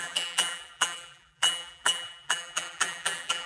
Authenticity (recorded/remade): remade